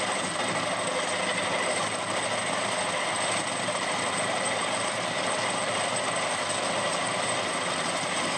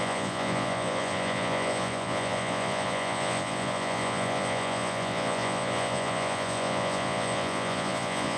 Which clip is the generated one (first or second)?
second